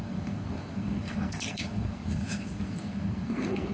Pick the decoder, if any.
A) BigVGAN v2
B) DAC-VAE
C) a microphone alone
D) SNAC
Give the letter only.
D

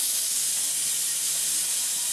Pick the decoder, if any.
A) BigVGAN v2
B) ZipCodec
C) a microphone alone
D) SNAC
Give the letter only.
C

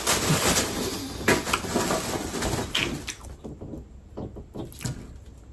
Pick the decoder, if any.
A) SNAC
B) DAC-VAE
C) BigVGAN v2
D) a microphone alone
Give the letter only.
D